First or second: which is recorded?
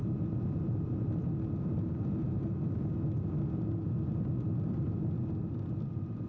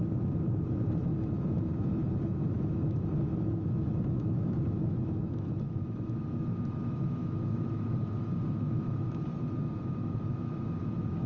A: first